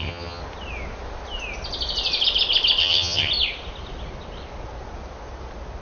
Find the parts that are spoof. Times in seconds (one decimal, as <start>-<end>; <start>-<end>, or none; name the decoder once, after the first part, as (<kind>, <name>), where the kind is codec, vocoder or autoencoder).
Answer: 0.0-0.4 (vocoder, HiFi-GAN); 2.8-3.3